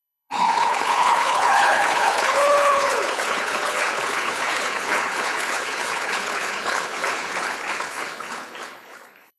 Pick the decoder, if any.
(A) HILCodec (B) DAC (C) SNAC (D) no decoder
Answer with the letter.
A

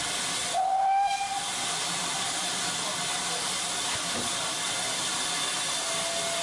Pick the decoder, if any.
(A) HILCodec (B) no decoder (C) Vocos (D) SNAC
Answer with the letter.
B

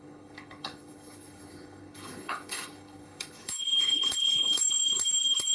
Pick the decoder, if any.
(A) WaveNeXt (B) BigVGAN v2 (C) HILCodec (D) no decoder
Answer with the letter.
C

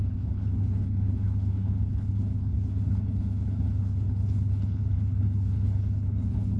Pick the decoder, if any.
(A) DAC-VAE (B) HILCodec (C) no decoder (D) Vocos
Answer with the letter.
B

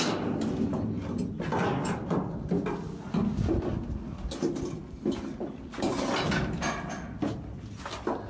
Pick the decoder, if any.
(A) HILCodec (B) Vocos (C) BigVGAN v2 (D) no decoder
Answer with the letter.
D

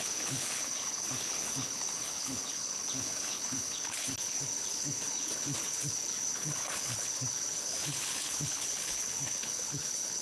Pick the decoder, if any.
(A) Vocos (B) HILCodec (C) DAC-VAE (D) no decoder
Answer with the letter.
B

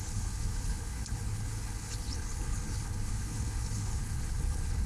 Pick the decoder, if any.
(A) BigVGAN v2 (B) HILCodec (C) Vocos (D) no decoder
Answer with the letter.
B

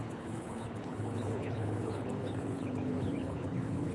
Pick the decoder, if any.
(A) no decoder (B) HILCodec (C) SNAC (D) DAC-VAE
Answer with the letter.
B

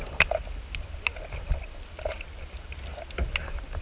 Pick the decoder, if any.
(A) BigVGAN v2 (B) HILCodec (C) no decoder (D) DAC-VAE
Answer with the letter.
C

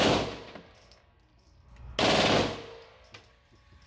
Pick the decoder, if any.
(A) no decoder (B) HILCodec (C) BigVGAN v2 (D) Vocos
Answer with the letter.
A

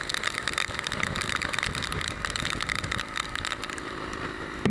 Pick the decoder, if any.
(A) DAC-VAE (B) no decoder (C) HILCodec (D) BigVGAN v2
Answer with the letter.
B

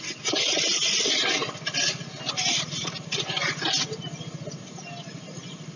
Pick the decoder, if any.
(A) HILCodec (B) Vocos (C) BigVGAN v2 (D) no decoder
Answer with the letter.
D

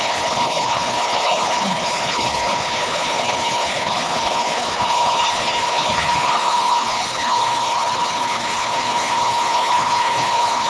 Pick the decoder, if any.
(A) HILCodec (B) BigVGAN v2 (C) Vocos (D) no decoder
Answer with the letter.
A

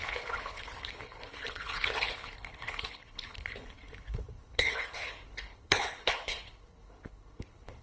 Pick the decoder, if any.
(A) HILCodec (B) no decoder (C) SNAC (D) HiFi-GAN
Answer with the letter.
A